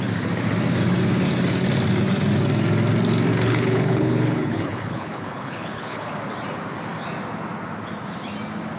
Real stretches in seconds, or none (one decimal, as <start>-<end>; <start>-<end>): 0.0-3.3; 6.1-8.8